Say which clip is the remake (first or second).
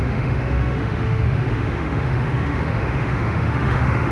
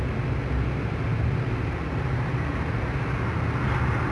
first